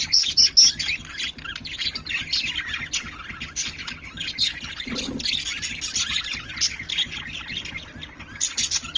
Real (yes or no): yes